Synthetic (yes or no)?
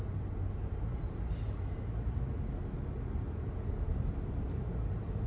no